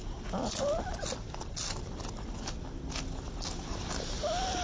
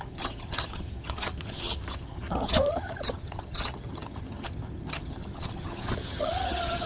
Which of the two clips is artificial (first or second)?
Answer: second